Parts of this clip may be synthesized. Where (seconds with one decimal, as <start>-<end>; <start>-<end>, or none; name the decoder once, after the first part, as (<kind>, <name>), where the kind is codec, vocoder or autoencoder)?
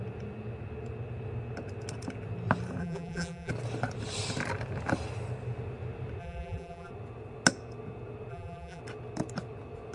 2.8-3.5 (vocoder, BigVGAN v2); 6.2-6.9; 8.3-8.8